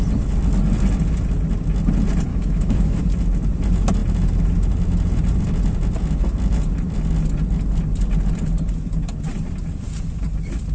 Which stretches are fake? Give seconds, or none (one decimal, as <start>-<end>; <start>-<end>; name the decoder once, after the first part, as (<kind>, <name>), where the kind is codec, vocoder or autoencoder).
2.3-3.0 (autoencoder, DAC-VAE)